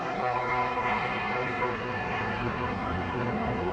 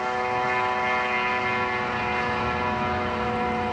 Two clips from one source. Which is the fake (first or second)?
first